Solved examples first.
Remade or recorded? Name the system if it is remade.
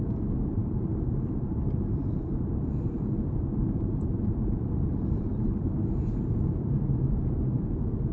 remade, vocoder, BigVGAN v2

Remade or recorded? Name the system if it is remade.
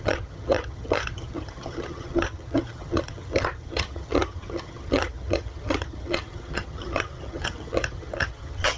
remade, vocoder, HiFi-GAN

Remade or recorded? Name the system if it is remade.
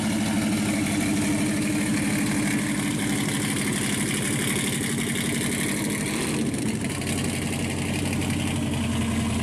recorded